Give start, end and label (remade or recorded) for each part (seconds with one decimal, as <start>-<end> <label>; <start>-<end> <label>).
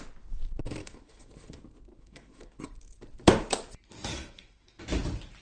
0.0-0.8 recorded; 0.8-1.3 remade; 1.3-1.9 recorded; 1.9-2.6 remade; 2.6-4.1 recorded; 4.1-4.8 remade; 4.8-5.4 recorded